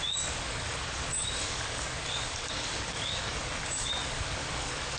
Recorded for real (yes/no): no